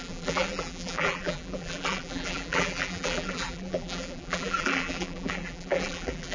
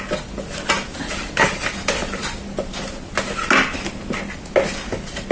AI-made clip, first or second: first